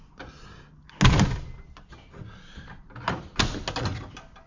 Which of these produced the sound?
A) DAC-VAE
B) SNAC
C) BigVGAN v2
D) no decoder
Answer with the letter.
D